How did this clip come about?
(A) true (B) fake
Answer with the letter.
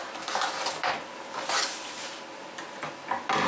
A